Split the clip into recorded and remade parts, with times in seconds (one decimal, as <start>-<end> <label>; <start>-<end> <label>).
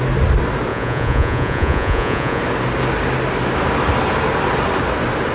0.0-0.7 recorded; 0.7-2.4 remade; 2.4-5.3 recorded